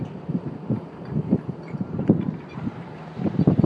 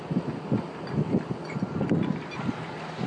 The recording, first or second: second